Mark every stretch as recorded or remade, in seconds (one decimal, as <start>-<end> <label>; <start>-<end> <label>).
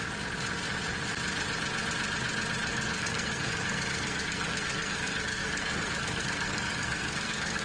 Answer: 0.0-2.7 recorded; 2.7-7.6 remade